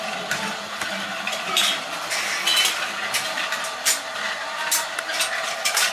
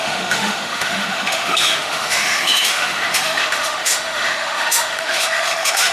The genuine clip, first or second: first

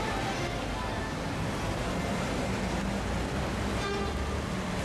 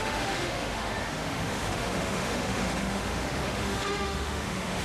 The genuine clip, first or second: first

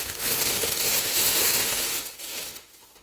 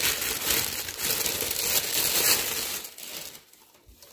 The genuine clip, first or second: second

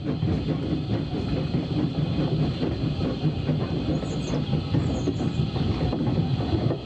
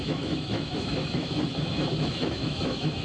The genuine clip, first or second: first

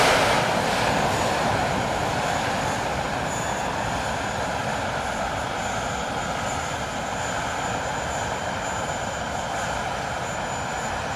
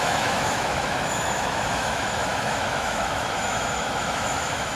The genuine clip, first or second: first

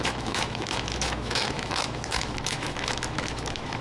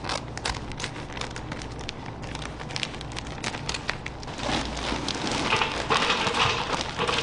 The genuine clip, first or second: second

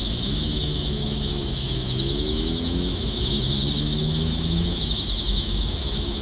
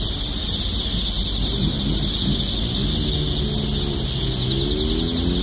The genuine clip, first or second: second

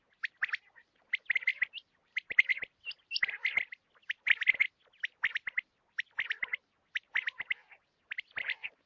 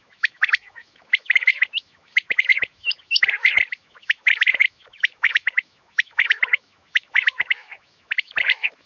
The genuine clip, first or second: first